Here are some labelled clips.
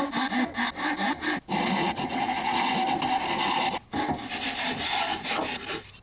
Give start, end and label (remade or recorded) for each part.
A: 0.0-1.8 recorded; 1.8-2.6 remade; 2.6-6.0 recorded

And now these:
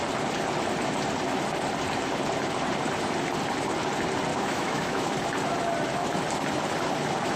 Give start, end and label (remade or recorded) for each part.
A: 0.0-4.3 recorded; 4.3-5.1 remade; 5.1-7.4 recorded

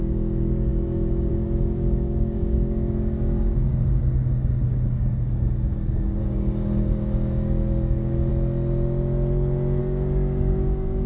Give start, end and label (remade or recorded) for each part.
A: 0.0-8.3 remade; 8.3-9.8 recorded; 9.8-11.1 remade

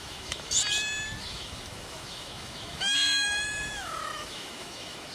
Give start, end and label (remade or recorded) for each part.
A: 0.0-0.6 remade; 0.6-1.2 recorded; 1.2-5.1 remade

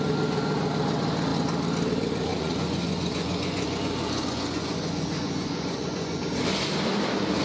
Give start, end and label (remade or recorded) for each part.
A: 0.0-2.3 recorded; 2.3-6.2 remade; 6.2-7.4 recorded

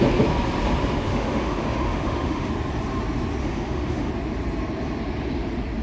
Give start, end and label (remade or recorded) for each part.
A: 0.0-1.1 recorded; 1.1-2.5 remade; 2.5-3.4 recorded; 3.4-4.1 remade; 4.1-5.8 recorded

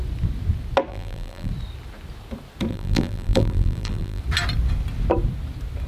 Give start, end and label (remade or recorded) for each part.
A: 0.0-0.9 recorded; 0.9-1.5 remade; 1.5-2.7 recorded; 2.7-4.2 remade; 4.2-5.9 recorded

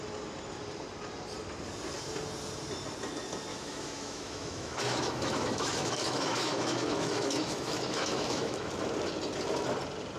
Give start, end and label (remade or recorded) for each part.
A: 0.0-3.5 recorded; 3.5-8.7 remade; 8.7-10.2 recorded